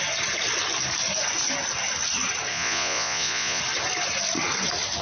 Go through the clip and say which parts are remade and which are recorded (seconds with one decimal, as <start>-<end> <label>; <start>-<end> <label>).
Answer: 0.0-2.5 recorded; 2.5-3.6 remade; 3.6-5.0 recorded